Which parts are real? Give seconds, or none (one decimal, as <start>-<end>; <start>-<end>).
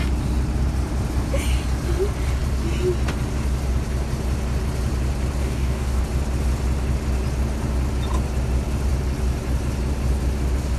0.0-5.4; 6.0-10.8